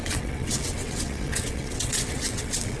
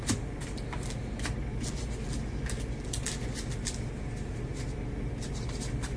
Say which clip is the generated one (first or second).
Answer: first